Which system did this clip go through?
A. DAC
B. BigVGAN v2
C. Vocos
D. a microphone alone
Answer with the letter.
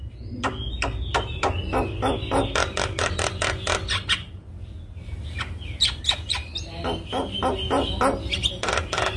D